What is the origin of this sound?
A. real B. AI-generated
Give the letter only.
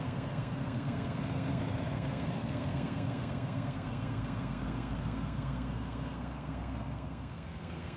B